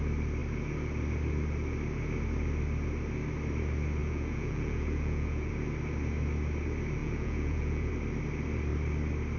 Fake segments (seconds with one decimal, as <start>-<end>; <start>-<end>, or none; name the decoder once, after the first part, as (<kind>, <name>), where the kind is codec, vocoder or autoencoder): 4.0-5.5 (vocoder, Vocos); 7.0-7.9